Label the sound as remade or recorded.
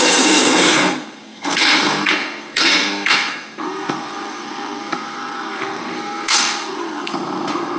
remade